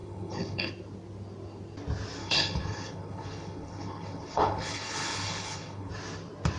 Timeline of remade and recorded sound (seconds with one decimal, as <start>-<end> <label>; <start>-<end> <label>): 0.0-0.7 remade; 0.7-2.2 recorded; 2.2-5.9 remade; 5.9-6.6 recorded